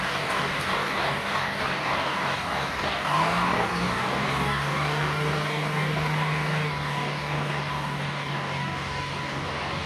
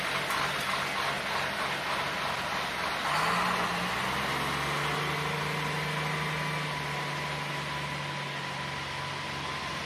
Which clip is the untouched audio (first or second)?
second